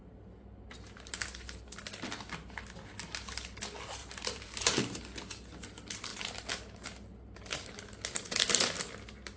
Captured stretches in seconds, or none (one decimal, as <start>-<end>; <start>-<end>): 0.0-4.0; 5.0-9.4